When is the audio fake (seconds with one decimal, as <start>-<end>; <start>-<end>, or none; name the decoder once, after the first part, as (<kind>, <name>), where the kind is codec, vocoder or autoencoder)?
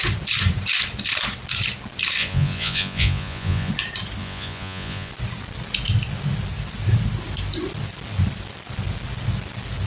2.2-3.7 (vocoder, Vocos); 4.2-5.1